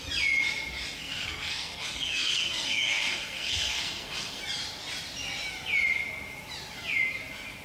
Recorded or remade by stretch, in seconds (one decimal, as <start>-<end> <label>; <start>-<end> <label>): 0.0-1.0 recorded; 1.0-4.4 remade; 4.4-7.6 recorded